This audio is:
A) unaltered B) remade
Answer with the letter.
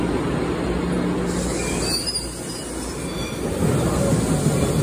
A